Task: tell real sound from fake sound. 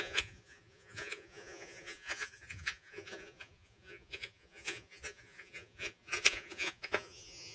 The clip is fake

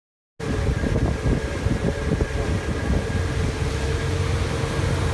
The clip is real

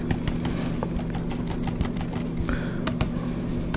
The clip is real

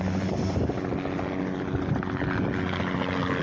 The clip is real